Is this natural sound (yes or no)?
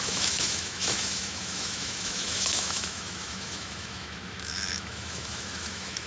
no